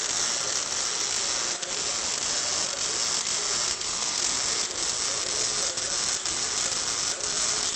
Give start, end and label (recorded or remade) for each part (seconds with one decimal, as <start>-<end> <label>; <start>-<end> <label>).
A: 0.0-3.7 recorded; 3.7-4.2 remade; 4.2-7.8 recorded